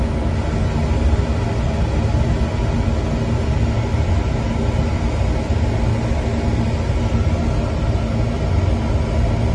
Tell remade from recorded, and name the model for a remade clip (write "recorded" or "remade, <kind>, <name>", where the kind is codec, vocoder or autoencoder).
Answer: recorded